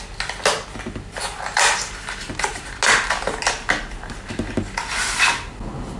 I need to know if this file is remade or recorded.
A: recorded